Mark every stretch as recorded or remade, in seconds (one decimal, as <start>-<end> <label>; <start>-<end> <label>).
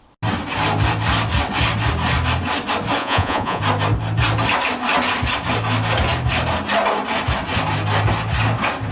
0.0-3.0 recorded; 3.0-3.6 remade; 3.6-8.9 recorded